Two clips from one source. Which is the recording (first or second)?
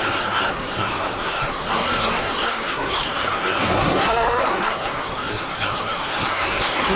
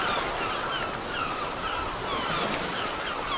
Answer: second